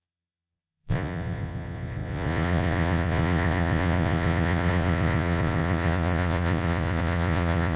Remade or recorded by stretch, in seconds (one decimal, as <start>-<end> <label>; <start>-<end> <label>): 0.0-7.8 remade